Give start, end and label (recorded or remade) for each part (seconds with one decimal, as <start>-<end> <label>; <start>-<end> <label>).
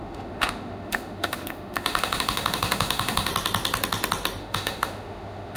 0.0-3.3 remade; 3.3-4.4 recorded; 4.4-5.6 remade